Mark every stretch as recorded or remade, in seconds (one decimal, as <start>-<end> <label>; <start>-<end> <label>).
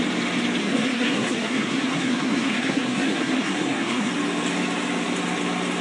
0.0-0.6 recorded; 0.6-4.1 remade; 4.1-5.8 recorded